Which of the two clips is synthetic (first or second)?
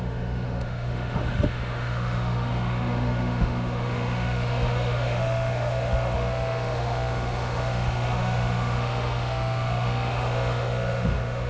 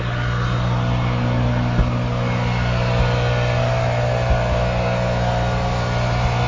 first